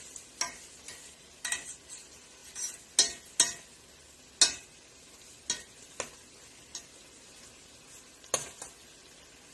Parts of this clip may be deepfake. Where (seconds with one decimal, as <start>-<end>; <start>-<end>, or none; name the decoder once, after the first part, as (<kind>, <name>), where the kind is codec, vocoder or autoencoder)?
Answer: none